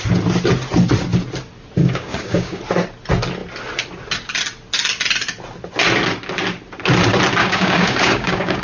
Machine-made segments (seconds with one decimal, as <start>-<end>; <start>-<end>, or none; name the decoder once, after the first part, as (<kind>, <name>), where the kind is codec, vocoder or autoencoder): 1.8-2.6 (codec, DAC); 7.4-8.6